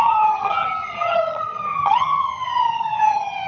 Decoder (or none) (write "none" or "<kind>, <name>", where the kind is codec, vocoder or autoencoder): vocoder, HiFi-GAN